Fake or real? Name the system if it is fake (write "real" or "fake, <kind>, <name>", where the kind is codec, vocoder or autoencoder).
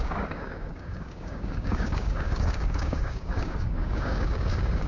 fake, codec, DAC